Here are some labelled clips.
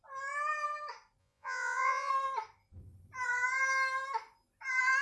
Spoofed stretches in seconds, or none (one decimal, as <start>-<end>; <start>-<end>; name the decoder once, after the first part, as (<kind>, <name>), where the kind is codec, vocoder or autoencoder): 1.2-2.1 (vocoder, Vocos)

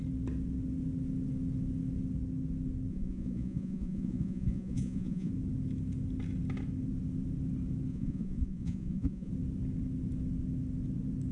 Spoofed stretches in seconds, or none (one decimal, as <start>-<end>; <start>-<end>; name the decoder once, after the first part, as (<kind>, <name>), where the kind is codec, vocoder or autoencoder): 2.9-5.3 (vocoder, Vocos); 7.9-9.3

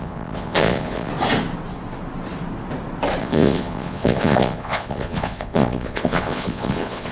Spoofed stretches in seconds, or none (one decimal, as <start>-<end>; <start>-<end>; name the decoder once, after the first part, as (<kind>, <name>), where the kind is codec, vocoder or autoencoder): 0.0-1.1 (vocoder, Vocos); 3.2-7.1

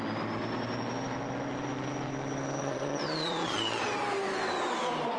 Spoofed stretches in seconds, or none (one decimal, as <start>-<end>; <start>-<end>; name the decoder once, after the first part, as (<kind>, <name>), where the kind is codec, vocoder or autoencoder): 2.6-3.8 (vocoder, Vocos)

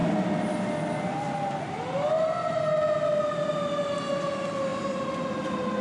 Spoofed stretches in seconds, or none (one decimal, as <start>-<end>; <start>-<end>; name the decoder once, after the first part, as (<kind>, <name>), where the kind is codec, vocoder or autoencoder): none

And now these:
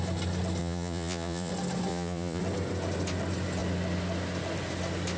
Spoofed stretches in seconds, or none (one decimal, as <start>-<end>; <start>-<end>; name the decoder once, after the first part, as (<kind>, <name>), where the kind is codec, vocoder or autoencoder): 0.6-1.5 (vocoder, Vocos); 1.9-2.4